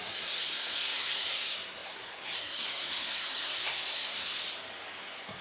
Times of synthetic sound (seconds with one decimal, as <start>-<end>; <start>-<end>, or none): 0.0-4.4; 5.0-5.4